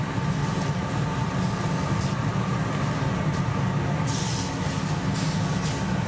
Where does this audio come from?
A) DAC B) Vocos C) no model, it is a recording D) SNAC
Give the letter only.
C